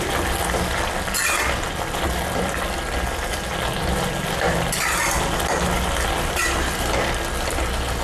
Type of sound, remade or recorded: recorded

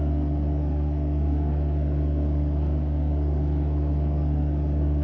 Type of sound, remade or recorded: remade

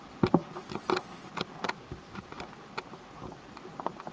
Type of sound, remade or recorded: recorded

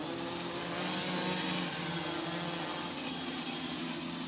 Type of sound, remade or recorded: recorded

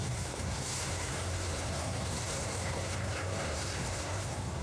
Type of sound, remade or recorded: remade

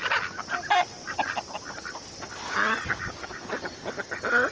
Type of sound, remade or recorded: recorded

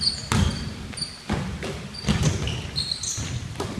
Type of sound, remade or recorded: recorded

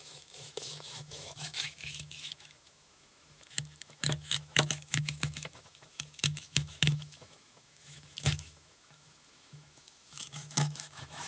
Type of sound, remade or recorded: remade